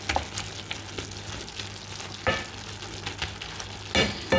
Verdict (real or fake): real